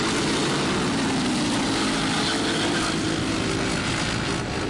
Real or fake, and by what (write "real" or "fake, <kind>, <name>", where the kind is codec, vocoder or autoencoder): real